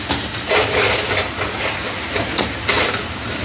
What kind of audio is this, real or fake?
fake